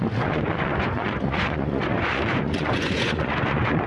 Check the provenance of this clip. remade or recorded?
remade